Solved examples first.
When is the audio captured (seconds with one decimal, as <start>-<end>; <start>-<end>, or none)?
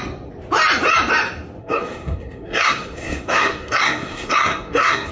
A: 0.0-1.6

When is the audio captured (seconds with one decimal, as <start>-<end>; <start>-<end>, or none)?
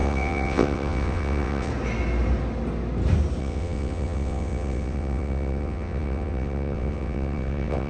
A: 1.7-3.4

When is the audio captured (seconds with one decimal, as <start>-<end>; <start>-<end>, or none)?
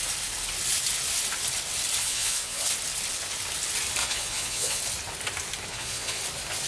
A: 0.0-2.0; 2.6-4.0; 4.8-5.7; 6.2-6.7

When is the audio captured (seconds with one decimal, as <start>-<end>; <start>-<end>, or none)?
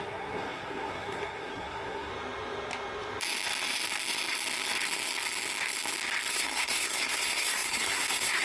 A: 2.1-6.3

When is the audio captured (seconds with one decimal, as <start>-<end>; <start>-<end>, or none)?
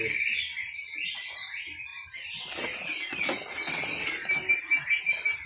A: 0.0-0.5; 1.1-5.5